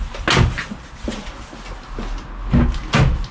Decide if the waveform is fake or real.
real